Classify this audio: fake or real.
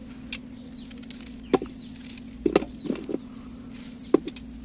real